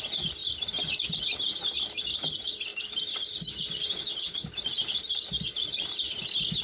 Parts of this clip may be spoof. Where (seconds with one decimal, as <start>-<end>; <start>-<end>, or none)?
2.7-5.7